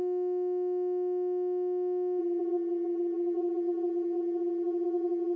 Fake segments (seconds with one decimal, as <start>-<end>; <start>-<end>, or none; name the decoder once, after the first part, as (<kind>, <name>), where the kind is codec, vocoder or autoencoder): 2.2-5.4 (vocoder, Vocos)